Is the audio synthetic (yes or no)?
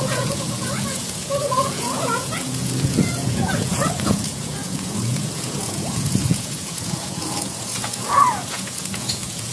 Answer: yes